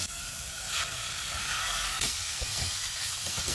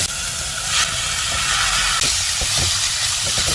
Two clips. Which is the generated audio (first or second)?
first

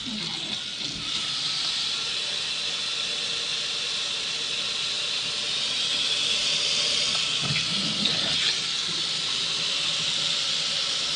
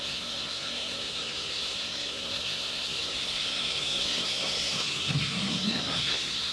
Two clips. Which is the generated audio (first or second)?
second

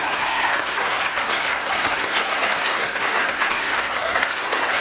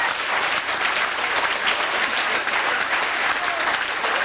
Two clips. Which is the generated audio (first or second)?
first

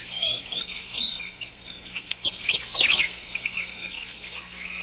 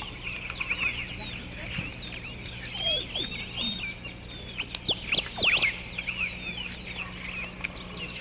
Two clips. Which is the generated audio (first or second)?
first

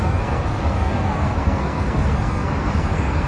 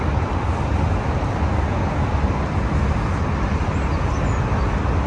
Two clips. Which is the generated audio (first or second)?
first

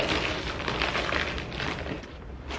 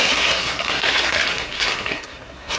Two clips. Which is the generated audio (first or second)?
second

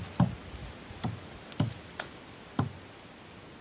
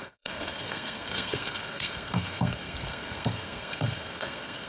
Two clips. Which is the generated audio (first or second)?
second